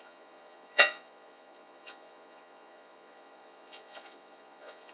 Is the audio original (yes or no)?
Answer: no